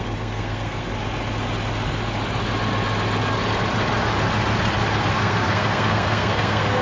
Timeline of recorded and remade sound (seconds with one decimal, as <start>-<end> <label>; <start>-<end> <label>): 0.0-0.9 remade; 0.9-5.0 recorded; 5.0-6.8 remade